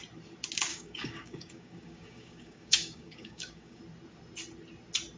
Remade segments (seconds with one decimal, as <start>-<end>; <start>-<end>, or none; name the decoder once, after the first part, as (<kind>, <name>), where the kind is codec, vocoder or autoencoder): 0.7-3.8 (codec, DAC)

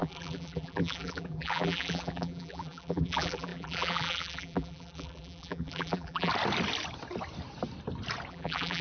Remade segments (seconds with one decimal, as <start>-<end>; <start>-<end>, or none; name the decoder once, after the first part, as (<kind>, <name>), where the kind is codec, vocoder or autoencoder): 0.0-6.3 (vocoder, BigVGAN v2); 8.3-8.8

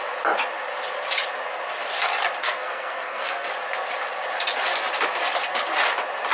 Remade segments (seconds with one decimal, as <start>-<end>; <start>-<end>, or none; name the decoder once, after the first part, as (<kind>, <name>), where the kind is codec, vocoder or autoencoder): 2.4-3.5 (codec, SNAC)

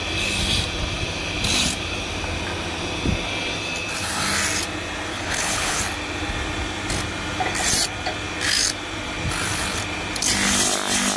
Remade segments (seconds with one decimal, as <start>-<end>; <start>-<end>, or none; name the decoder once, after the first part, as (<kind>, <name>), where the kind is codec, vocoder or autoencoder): 5.1-5.8 (codec, HILCodec)

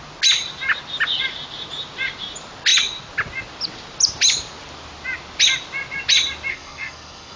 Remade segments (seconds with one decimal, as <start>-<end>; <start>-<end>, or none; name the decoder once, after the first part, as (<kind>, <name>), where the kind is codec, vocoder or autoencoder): 6.5-7.4 (codec, SNAC)

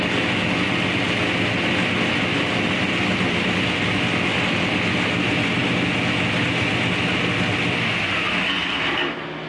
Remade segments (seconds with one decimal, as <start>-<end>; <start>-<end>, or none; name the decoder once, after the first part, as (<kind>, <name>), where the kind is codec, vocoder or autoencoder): none

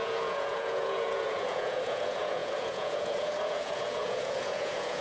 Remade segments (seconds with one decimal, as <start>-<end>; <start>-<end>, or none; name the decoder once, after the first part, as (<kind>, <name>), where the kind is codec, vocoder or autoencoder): 0.0-5.0 (vocoder, Vocos)